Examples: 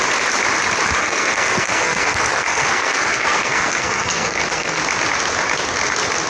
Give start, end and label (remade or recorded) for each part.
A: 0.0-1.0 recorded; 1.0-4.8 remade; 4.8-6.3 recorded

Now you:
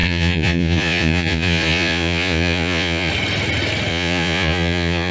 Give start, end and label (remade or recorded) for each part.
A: 0.0-3.1 remade; 3.1-3.9 recorded; 3.9-5.1 remade

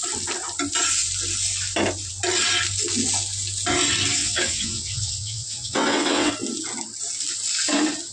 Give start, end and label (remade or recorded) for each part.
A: 0.0-4.2 recorded; 4.2-6.3 remade; 6.3-8.1 recorded

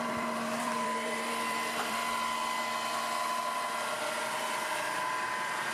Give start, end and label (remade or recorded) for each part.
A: 0.0-2.0 remade; 2.0-5.0 recorded; 5.0-5.7 remade

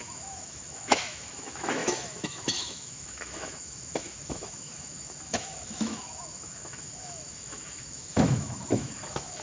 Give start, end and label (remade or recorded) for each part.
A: 0.0-9.4 remade